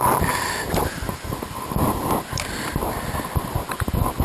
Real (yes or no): yes